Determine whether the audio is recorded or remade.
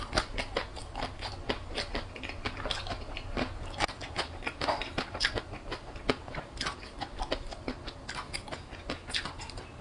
recorded